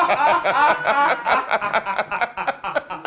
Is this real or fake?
real